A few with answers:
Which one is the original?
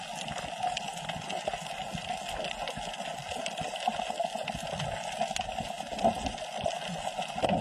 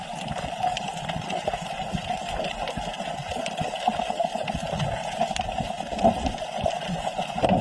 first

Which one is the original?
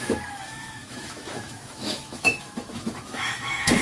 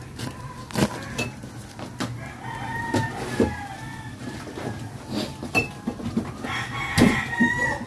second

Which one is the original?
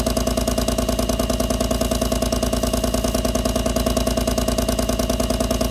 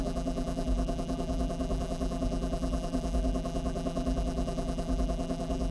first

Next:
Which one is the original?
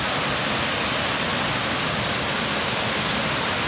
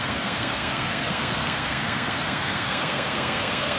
first